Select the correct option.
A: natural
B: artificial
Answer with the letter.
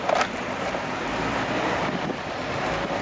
A